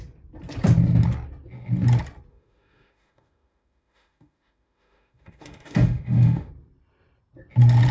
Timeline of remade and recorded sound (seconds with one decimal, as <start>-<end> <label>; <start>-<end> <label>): 0.0-2.3 recorded; 2.3-6.5 remade; 6.5-7.9 recorded